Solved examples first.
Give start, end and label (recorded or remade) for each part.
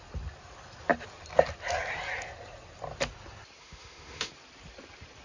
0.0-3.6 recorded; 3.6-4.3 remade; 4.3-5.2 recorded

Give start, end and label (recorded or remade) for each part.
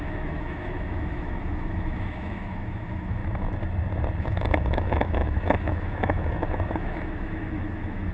0.0-3.2 remade; 3.2-4.2 recorded; 4.2-8.1 remade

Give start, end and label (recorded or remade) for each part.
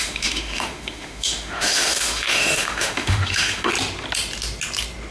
0.0-3.7 remade; 3.7-5.1 recorded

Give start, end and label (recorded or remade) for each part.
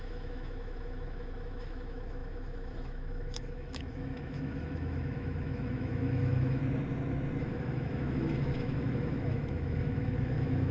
0.0-6.6 remade; 6.6-7.4 recorded; 7.4-10.7 remade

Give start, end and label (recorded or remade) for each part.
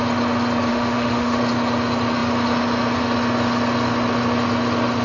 0.0-0.7 recorded; 0.7-1.4 remade; 1.4-5.0 recorded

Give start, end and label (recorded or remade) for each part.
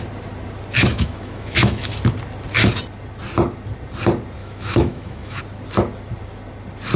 0.0-0.9 recorded; 0.9-2.0 remade; 2.0-4.4 recorded; 4.4-5.4 remade; 5.4-7.0 recorded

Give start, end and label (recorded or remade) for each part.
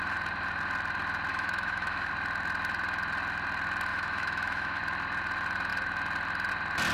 0.0-1.3 recorded; 1.3-2.1 remade; 2.1-3.9 recorded; 3.9-4.8 remade; 4.8-6.9 recorded